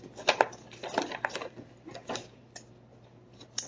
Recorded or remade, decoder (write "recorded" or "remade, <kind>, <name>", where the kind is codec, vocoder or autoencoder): recorded